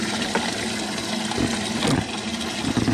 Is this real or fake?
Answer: real